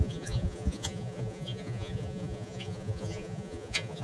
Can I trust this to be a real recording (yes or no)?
no